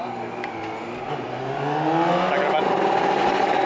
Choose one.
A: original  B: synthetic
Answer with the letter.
A